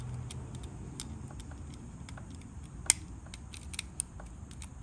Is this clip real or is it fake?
real